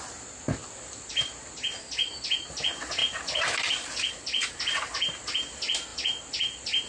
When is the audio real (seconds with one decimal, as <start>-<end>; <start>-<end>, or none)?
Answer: 0.0-0.6; 1.5-3.0; 4.1-5.9